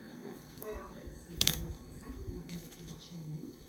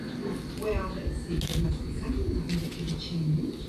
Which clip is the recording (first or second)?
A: second